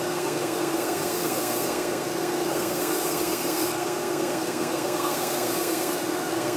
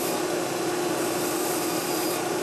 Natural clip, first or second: second